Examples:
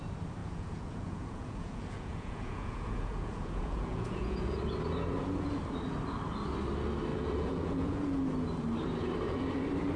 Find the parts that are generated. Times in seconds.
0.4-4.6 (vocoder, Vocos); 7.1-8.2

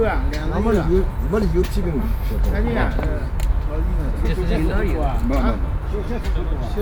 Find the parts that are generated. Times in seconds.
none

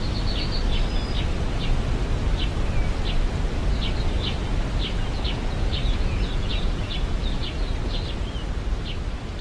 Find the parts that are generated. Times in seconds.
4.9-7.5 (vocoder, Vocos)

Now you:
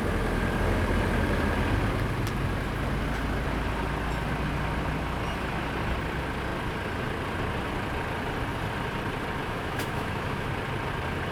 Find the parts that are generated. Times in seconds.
9.4-10.5 (autoencoder, DAC-VAE)